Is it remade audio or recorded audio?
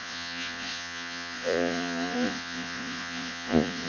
remade